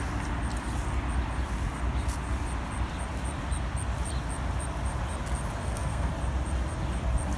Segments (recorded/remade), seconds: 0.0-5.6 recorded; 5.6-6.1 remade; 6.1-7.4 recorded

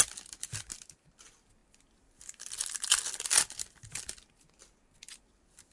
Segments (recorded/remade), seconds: 0.0-5.7 recorded

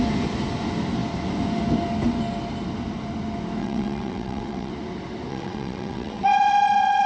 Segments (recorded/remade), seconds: 0.0-3.6 recorded; 3.6-4.7 remade; 4.7-5.3 recorded; 5.3-7.1 remade